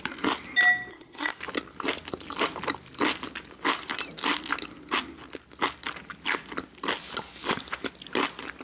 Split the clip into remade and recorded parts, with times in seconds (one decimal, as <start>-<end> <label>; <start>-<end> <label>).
0.0-0.9 recorded; 0.9-1.4 remade; 1.4-8.6 recorded

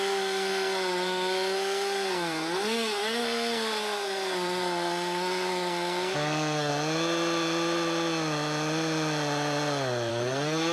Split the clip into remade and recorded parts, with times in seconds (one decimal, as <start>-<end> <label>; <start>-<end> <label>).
0.0-6.7 remade; 6.7-10.1 recorded; 10.1-10.7 remade